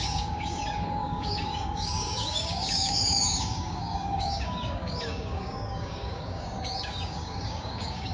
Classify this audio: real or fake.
fake